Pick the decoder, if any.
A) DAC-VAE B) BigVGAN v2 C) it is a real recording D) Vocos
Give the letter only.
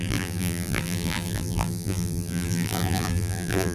B